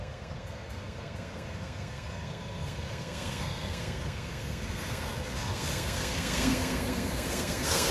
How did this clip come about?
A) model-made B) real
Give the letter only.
A